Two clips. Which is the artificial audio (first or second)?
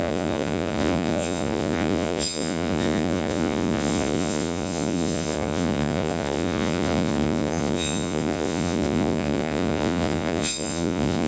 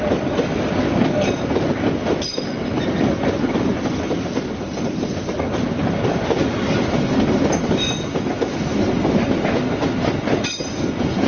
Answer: first